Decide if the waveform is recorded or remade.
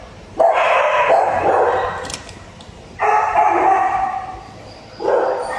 remade